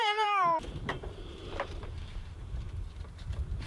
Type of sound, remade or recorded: remade